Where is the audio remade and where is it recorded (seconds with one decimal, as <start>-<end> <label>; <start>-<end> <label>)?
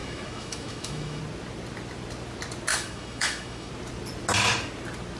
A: 0.0-1.2 remade; 1.2-2.7 recorded; 2.7-3.7 remade; 3.7-5.2 recorded